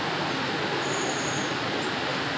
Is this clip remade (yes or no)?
no